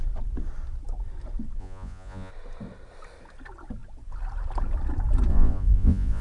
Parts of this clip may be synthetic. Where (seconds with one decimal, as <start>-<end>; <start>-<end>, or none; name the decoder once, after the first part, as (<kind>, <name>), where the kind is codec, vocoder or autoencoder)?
1.6-2.3 (vocoder, Vocos); 5.3-6.2